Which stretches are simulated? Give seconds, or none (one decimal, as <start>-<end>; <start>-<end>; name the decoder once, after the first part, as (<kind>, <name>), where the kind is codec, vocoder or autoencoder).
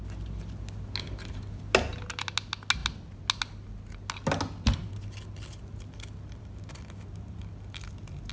none